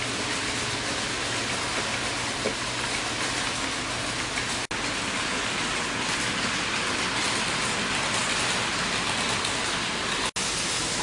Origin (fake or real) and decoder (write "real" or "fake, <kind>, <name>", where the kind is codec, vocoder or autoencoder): real